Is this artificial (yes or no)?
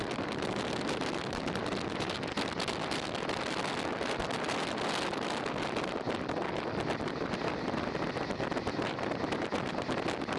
no